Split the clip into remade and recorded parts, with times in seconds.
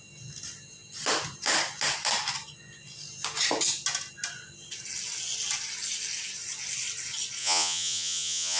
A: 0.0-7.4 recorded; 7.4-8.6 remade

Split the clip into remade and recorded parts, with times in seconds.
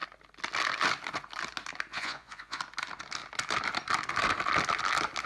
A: 0.0-1.9 recorded; 1.9-2.6 remade; 2.6-5.3 recorded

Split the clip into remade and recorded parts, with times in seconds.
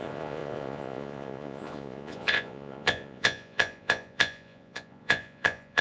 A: 0.0-5.8 remade